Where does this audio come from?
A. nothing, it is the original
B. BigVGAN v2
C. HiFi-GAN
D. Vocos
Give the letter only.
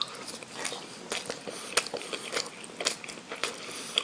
A